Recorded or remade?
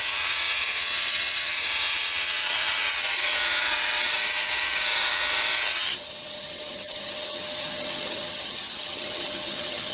remade